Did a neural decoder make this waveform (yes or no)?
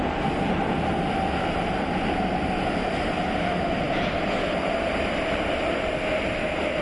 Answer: no